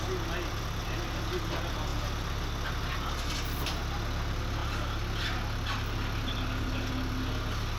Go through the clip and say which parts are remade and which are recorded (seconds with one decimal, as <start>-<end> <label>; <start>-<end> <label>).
0.0-7.8 recorded

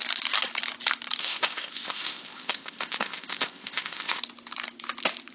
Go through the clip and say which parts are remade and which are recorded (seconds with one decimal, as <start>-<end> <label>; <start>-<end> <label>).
0.0-1.2 recorded; 1.2-4.2 remade; 4.2-5.3 recorded